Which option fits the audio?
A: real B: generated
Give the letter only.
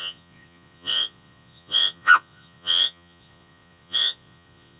B